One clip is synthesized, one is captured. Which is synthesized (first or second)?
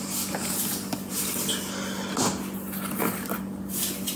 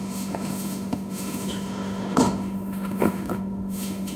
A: second